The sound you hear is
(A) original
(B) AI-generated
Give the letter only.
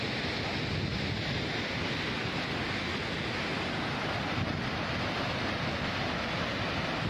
A